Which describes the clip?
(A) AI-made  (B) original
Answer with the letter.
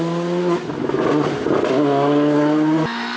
B